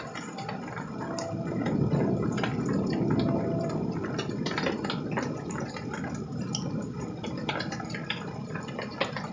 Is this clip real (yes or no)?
yes